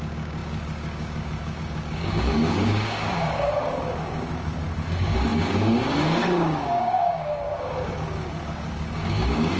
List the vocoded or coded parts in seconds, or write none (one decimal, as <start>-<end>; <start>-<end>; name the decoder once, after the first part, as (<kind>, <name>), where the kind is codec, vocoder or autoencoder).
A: 0.0-9.6 (codec, DAC)